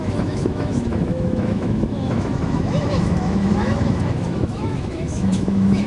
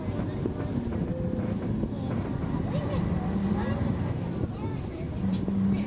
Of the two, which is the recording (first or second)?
second